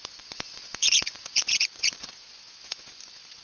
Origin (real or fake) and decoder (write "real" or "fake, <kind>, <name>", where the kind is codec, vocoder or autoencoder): fake, vocoder, Vocos